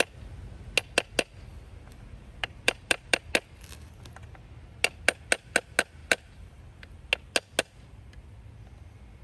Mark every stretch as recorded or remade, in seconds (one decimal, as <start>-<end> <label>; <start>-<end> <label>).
0.0-1.9 recorded; 1.9-3.2 remade; 3.2-6.0 recorded; 6.0-6.6 remade; 6.6-9.2 recorded